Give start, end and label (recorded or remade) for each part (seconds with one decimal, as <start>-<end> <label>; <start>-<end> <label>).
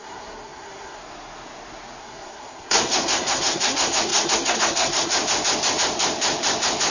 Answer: 0.0-1.0 remade; 1.0-2.0 recorded; 2.0-5.1 remade; 5.1-6.9 recorded